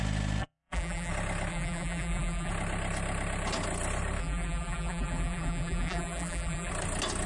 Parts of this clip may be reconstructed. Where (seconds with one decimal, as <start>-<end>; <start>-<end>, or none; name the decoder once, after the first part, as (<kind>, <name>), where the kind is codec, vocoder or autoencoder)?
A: 0.4-1.1 (vocoder, BigVGAN v2); 1.5-2.5; 4.2-6.7